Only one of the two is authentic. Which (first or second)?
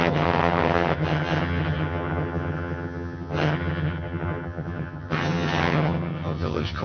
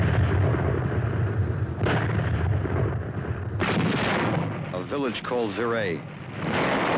second